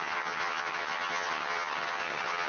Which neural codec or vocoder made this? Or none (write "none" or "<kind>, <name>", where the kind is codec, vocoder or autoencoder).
vocoder, HiFi-GAN